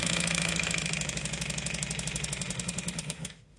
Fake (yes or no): yes